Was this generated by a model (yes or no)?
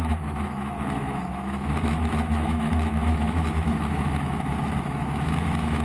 yes